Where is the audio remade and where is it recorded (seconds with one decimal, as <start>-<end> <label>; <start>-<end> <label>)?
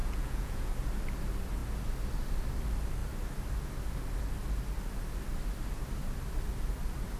0.0-0.7 remade; 0.7-7.2 recorded